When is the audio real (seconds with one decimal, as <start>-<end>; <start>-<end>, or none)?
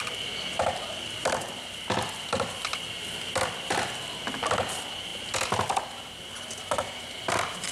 none